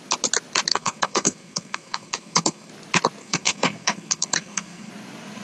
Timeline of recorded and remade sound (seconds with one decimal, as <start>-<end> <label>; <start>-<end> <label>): 0.0-0.7 recorded; 0.7-2.7 remade; 2.7-3.2 recorded; 3.2-4.9 remade; 4.9-5.4 recorded